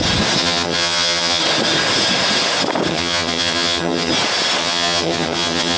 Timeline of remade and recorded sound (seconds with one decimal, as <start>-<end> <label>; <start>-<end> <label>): 0.0-0.4 recorded; 0.4-1.4 remade; 1.4-2.9 recorded; 2.9-4.1 remade; 4.1-4.6 recorded; 4.6-5.8 remade